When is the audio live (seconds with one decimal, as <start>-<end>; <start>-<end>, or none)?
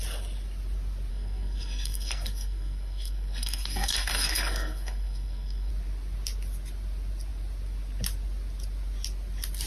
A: 0.0-1.1; 5.7-9.7